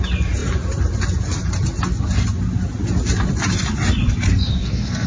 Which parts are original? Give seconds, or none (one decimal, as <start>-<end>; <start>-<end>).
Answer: 0.0-4.3